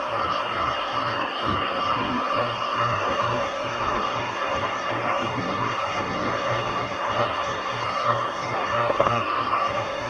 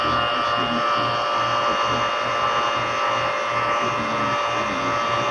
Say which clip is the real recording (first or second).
second